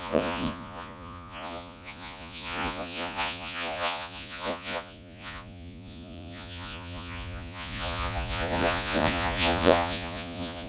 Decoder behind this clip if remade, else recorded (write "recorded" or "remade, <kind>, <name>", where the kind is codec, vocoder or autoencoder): remade, vocoder, Vocos